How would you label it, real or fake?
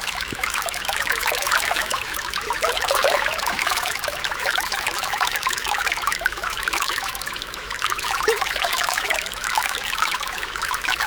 fake